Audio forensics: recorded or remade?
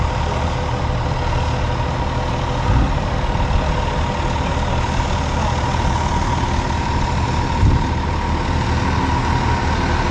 recorded